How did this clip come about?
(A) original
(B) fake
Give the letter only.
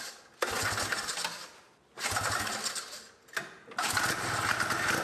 A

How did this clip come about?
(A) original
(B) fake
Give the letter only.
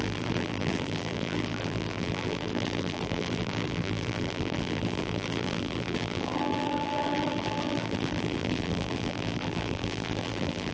B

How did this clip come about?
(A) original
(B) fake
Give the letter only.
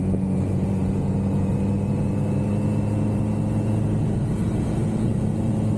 B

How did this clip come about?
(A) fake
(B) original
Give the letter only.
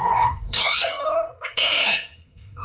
A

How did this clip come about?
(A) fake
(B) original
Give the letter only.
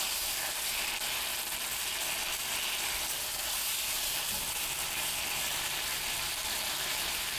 B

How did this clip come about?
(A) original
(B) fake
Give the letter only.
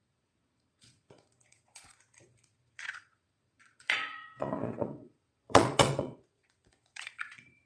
B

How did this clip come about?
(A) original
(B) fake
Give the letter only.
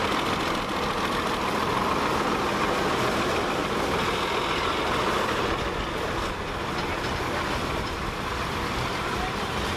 A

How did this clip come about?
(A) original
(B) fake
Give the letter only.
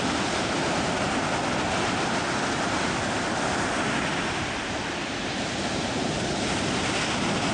A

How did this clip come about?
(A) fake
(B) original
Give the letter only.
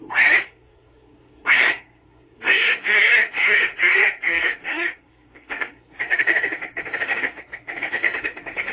A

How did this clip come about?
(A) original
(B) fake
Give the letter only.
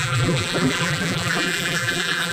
B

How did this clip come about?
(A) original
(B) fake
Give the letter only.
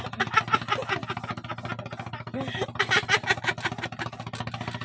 A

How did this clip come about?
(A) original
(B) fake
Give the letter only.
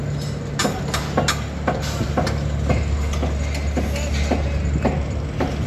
A